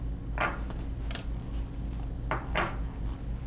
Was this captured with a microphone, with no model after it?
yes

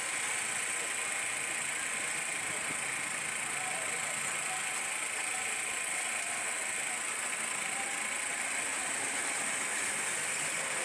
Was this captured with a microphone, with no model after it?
yes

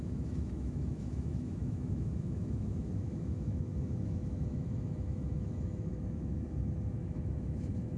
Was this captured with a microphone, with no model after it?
no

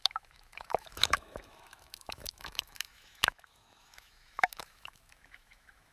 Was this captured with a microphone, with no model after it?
no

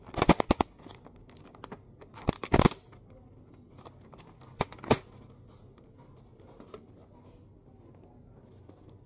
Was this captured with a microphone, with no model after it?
yes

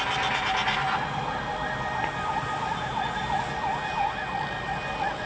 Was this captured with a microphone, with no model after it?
yes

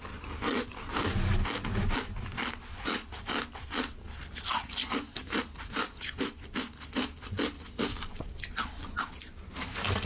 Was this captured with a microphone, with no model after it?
yes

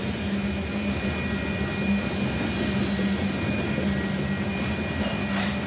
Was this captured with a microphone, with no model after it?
yes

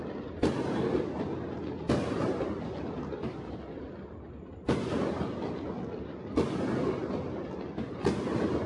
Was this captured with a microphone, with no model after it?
yes